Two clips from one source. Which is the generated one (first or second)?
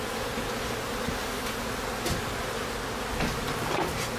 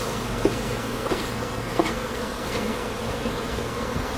second